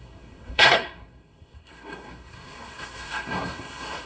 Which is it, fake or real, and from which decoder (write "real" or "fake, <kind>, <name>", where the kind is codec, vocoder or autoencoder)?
fake, codec, SNAC